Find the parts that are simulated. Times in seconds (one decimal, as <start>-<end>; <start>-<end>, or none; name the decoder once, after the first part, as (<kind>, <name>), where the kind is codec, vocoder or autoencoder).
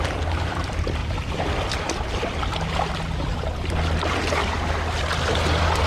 0.0-4.4 (vocoder, BigVGAN v2); 5.3-5.9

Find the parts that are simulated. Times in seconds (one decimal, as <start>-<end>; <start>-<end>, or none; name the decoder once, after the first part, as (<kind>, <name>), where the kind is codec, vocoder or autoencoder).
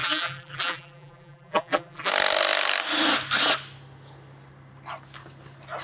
0.0-2.1 (vocoder, BigVGAN v2)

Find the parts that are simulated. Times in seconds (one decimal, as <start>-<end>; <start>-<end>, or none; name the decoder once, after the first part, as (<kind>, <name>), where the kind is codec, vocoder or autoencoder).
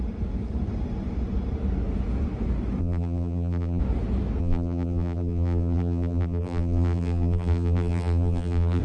2.8-3.8 (vocoder, BigVGAN v2); 4.4-8.8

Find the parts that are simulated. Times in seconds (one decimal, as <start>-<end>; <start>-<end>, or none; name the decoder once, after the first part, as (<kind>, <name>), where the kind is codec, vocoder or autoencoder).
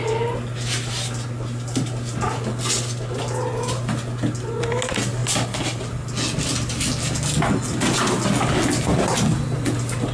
none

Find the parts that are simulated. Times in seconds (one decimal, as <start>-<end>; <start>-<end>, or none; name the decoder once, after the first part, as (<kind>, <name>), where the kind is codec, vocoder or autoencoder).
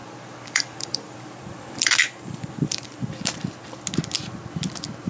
0.0-3.1 (vocoder, BigVGAN v2)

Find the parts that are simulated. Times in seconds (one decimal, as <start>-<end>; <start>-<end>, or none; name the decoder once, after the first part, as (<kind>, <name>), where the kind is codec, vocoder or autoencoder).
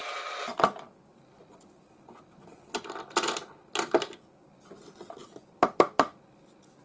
0.0-0.9 (vocoder, BigVGAN v2); 5.2-6.8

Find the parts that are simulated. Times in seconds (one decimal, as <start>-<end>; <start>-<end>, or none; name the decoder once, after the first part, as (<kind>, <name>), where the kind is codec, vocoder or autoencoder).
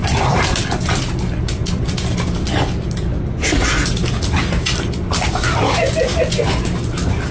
0.0-0.6 (vocoder, BigVGAN v2)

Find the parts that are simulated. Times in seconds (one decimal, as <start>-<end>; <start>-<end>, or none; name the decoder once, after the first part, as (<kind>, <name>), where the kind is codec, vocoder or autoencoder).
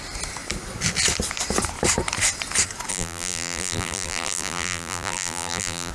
2.9-5.9 (vocoder, BigVGAN v2)